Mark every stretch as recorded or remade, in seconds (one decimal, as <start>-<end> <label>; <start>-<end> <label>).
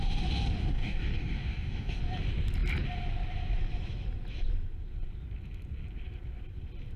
0.0-0.6 recorded; 0.6-2.0 remade; 2.0-7.0 recorded